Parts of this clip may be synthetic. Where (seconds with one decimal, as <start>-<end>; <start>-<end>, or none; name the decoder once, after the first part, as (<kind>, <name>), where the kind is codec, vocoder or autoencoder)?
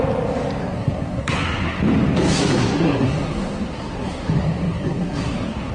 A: 0.6-1.8 (codec, SNAC); 2.3-5.7